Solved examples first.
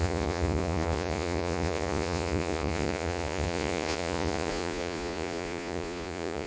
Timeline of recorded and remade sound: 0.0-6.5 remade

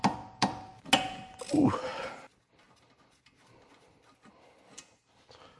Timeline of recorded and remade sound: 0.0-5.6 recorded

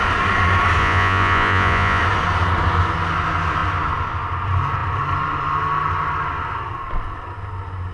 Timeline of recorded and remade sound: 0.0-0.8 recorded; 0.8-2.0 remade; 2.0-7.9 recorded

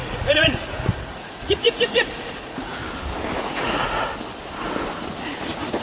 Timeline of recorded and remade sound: 0.0-2.8 remade; 2.8-3.4 recorded; 3.4-4.1 remade; 4.1-5.8 recorded

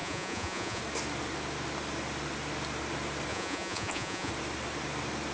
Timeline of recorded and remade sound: 0.0-0.8 remade; 0.8-3.3 recorded; 3.3-4.3 remade; 4.3-5.3 recorded

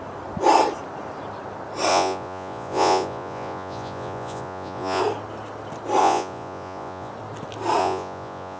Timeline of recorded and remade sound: 0.0-1.9 recorded; 1.9-5.0 remade; 5.0-6.0 recorded; 6.0-7.1 remade; 7.1-7.8 recorded; 7.8-8.6 remade

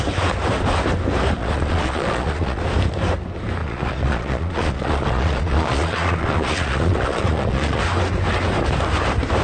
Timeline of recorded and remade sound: 0.0-1.4 recorded; 1.4-2.6 remade; 2.6-3.6 recorded; 3.6-7.8 remade; 7.8-9.4 recorded

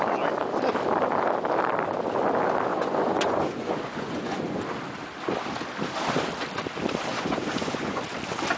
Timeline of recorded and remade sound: 0.0-2.7 recorded; 2.7-4.6 remade; 4.6-7.1 recorded; 7.1-8.0 remade; 8.0-8.6 recorded